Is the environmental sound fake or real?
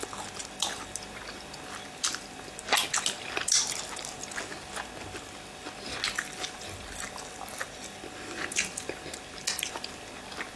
real